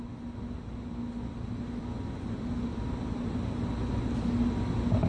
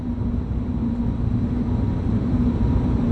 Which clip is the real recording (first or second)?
first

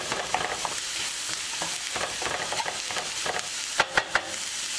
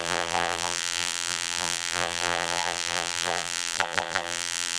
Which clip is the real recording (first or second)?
first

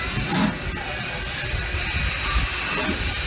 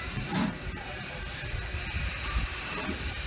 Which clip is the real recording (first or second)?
first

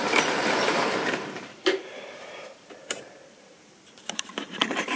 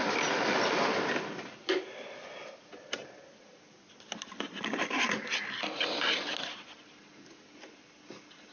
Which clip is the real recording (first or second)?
second